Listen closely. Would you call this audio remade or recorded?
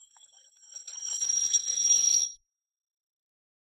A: remade